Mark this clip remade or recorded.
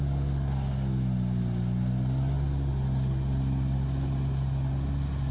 recorded